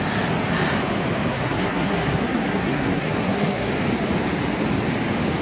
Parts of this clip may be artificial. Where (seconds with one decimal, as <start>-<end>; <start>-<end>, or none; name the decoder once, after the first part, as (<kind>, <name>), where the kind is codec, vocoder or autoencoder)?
1.3-3.7 (codec, SNAC)